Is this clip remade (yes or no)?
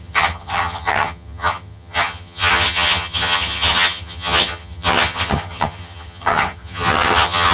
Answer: yes